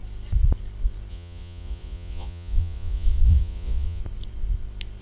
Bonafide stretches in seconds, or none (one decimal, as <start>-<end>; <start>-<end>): 0.0-1.1; 4.0-5.0